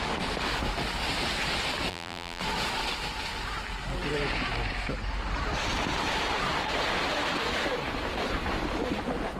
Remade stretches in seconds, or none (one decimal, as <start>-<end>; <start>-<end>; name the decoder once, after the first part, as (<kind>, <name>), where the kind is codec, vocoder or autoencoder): 1.9-2.4 (vocoder, BigVGAN v2)